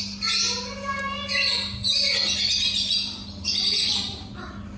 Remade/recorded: recorded